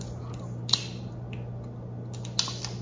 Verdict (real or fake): real